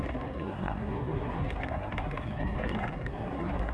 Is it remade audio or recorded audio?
remade